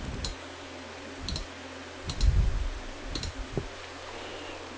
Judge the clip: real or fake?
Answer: real